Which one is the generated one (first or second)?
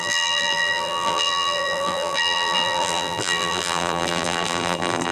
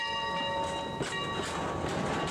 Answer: first